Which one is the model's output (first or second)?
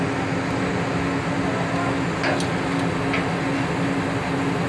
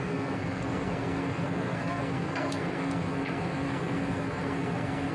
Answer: second